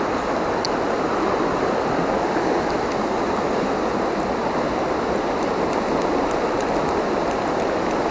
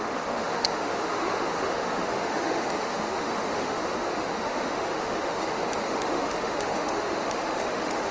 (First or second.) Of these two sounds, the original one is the first